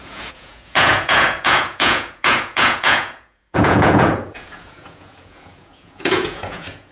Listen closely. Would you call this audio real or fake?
fake